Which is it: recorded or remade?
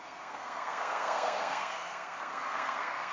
remade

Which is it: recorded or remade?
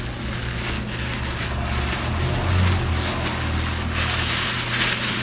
recorded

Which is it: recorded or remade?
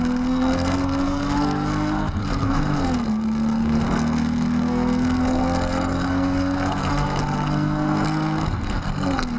remade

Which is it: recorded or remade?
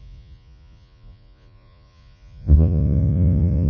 remade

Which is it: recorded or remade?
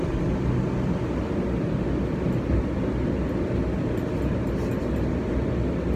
recorded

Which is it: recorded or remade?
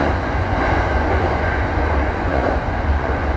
remade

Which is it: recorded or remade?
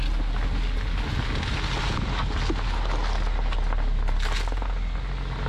recorded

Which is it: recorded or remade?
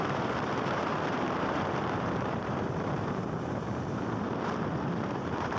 remade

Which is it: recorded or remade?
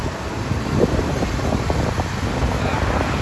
remade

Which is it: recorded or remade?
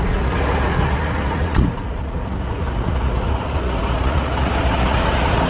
remade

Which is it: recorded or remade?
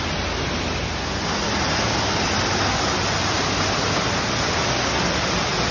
recorded